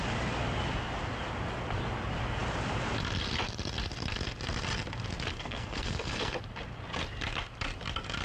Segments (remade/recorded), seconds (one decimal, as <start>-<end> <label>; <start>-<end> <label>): 0.0-5.3 recorded; 5.3-6.4 remade; 6.4-8.2 recorded